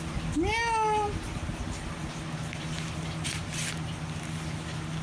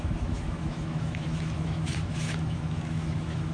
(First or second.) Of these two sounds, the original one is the first